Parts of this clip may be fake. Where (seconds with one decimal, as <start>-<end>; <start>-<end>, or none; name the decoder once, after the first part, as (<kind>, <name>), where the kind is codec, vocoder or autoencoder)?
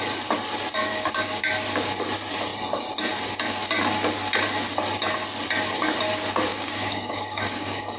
0.9-1.4 (codec, DAC); 6.5-8.0